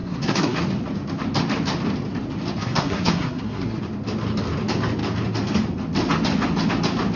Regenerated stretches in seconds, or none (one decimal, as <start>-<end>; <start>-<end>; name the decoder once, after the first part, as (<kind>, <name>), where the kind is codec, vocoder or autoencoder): 0.0-0.6 (codec, SNAC); 2.6-3.8

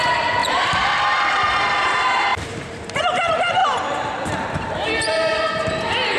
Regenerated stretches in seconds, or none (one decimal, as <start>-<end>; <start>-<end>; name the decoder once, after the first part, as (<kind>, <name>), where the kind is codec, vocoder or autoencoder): 0.4-0.9 (vocoder, BigVGAN v2); 2.3-3.0